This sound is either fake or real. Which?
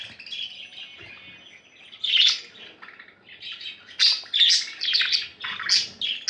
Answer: real